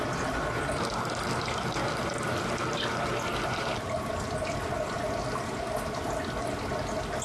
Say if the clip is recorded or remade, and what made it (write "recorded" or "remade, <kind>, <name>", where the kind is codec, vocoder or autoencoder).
recorded